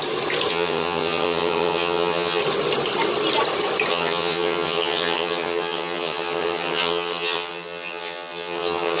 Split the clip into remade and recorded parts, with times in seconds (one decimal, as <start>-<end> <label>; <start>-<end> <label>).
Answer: 0.0-0.5 recorded; 0.5-2.4 remade; 2.4-3.9 recorded; 3.9-9.0 remade